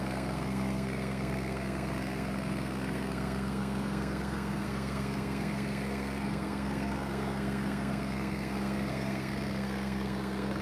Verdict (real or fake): fake